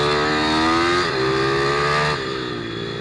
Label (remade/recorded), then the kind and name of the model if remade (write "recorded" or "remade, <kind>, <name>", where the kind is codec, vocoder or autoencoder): recorded